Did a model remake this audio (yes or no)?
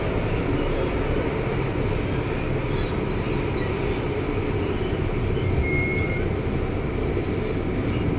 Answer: no